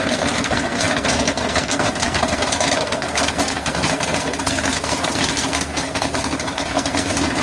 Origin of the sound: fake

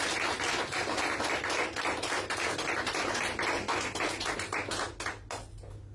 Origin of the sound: real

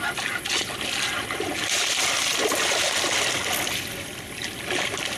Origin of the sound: real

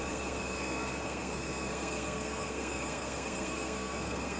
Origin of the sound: fake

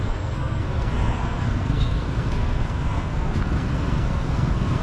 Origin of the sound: fake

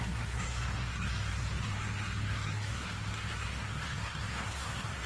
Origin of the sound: fake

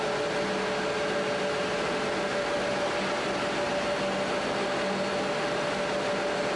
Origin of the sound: real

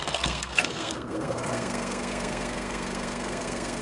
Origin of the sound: fake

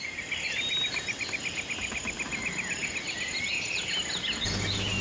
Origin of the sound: real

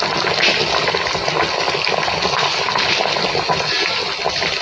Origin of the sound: real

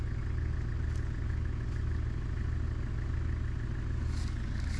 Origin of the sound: real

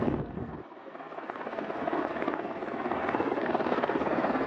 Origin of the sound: fake